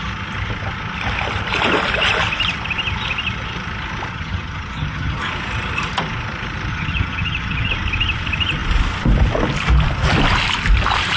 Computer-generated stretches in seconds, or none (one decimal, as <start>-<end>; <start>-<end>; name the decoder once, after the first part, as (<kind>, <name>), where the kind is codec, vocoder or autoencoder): 4.1-5.2 (vocoder, HiFi-GAN); 6.7-7.7